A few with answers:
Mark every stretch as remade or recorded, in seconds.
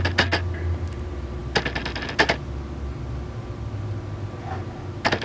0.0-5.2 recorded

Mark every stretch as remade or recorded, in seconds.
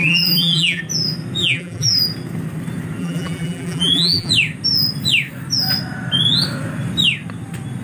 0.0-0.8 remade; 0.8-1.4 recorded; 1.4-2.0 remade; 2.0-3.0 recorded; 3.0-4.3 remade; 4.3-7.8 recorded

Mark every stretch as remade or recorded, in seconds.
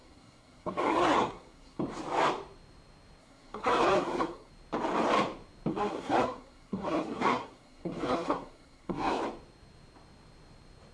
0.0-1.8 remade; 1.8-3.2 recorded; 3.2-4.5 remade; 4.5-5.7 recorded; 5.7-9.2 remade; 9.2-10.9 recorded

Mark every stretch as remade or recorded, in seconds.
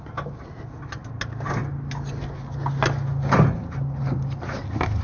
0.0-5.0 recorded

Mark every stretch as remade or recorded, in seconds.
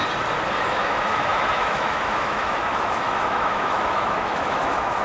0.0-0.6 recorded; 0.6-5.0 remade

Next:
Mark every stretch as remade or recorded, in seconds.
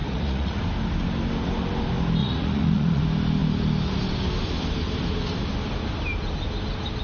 0.0-0.6 remade; 0.6-2.2 recorded; 2.2-3.0 remade; 3.0-7.0 recorded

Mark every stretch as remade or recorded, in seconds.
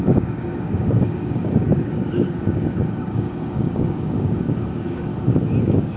0.0-5.1 remade; 5.1-5.6 recorded; 5.6-6.0 remade